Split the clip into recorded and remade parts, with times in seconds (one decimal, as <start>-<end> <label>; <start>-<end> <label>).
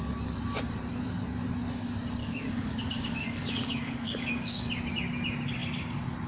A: 0.0-2.2 recorded; 2.2-4.7 remade; 4.7-6.3 recorded